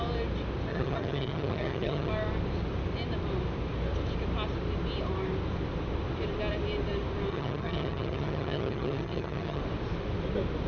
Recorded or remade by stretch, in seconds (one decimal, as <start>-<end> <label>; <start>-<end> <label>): 0.0-0.7 recorded; 0.7-2.1 remade; 2.1-7.3 recorded; 7.3-9.6 remade; 9.6-10.7 recorded